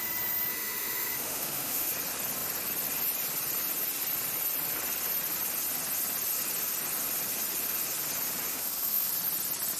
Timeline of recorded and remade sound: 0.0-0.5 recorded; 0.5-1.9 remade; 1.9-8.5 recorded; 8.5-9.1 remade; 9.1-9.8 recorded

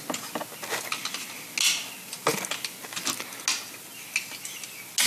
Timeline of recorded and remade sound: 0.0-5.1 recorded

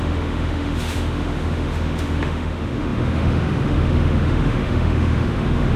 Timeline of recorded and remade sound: 0.0-5.8 remade

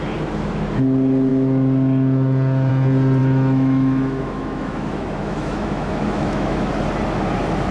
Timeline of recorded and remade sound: 0.0-3.2 recorded; 3.2-6.7 remade; 6.7-7.7 recorded

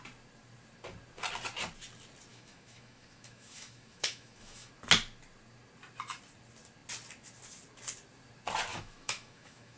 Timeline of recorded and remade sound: 0.0-2.3 recorded; 2.3-4.7 remade; 4.7-8.7 recorded; 8.7-9.8 remade

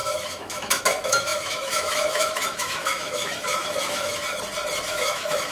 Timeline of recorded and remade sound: 0.0-4.2 remade; 4.2-4.9 recorded; 4.9-5.5 remade

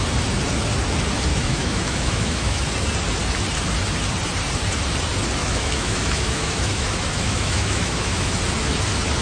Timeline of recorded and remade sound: 0.0-1.3 recorded; 1.3-2.6 remade; 2.6-5.4 recorded; 5.4-8.4 remade; 8.4-9.2 recorded

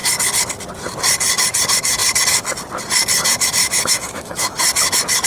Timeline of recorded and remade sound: 0.0-3.6 recorded; 3.6-4.6 remade; 4.6-5.3 recorded